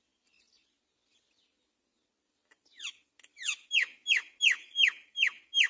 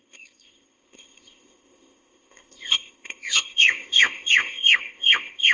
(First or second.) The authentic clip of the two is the first